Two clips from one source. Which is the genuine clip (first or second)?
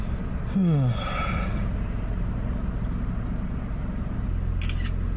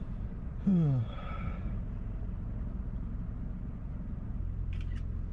first